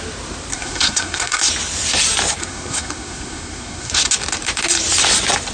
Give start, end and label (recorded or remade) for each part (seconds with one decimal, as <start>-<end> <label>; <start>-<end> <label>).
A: 0.0-0.5 recorded; 0.5-1.4 remade; 1.4-2.4 recorded; 2.4-3.9 remade; 3.9-5.5 recorded